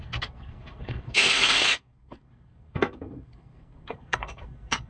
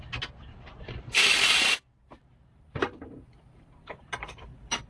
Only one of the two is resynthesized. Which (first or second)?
first